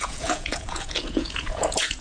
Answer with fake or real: fake